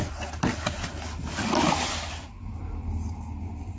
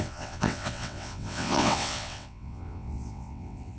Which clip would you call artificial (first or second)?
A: second